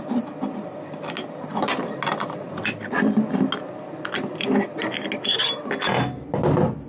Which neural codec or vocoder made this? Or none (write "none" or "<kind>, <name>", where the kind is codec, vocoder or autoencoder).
none